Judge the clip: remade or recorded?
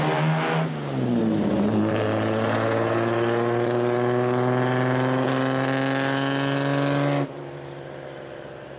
recorded